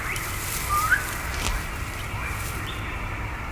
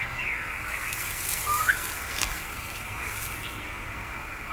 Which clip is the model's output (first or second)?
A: second